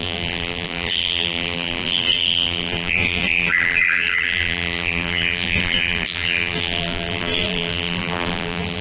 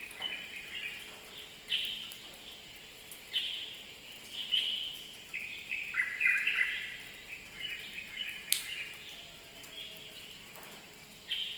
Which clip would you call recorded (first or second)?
second